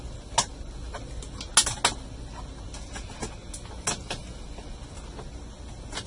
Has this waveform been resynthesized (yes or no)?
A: no